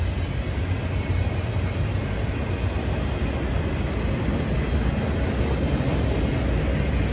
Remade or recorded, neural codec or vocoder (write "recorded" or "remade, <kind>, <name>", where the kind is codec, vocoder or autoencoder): recorded